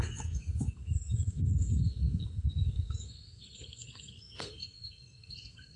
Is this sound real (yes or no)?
no